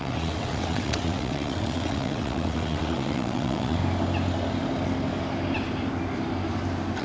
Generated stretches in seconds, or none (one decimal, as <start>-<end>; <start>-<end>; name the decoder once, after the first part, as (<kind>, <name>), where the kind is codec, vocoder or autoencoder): 0.0-3.8 (vocoder, WaveNeXt)